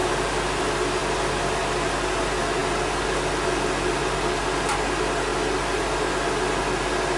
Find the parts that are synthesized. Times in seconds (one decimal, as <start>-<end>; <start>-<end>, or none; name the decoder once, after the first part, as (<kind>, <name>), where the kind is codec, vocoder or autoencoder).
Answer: none